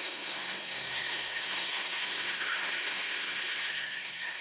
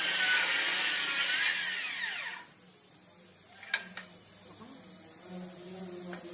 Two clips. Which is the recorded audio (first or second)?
second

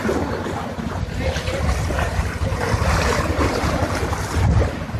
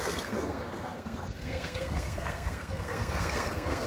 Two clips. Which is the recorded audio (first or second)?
first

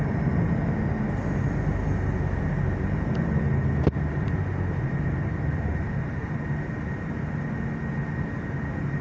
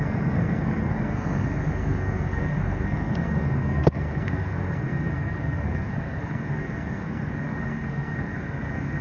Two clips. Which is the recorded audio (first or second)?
first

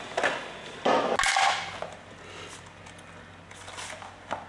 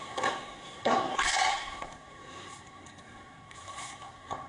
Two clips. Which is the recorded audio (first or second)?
first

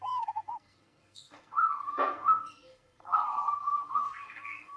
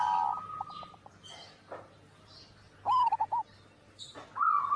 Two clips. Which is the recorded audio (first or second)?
second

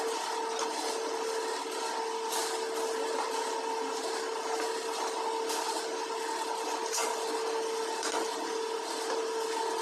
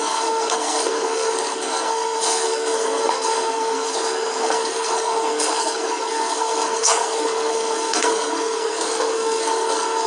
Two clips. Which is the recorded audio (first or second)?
first